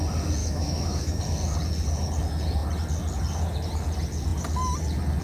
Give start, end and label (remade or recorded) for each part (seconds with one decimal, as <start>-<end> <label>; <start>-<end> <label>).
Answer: 0.0-0.4 recorded; 0.4-1.2 remade; 1.2-5.2 recorded